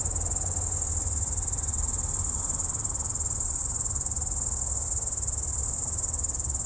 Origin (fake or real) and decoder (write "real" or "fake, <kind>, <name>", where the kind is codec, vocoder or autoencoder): real